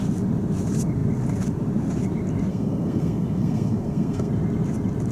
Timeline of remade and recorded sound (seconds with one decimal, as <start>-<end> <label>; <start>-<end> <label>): 0.0-2.5 recorded; 2.5-4.3 remade; 4.3-5.1 recorded